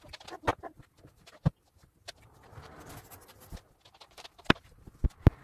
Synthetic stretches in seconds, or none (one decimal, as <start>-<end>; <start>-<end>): none